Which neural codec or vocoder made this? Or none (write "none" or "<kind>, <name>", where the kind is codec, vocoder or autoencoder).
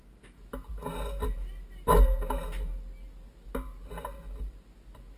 none